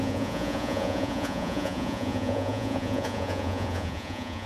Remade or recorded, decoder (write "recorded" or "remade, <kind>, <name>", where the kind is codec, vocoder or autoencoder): remade, vocoder, Vocos